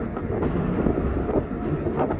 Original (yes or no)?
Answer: yes